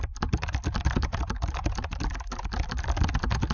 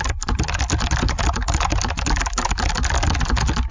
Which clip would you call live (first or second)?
second